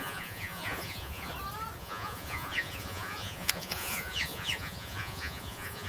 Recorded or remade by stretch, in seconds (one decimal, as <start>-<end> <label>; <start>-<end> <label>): 0.0-1.3 remade; 1.3-1.8 recorded; 1.8-5.9 remade